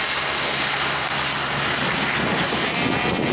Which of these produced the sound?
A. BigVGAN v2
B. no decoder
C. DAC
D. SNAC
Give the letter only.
B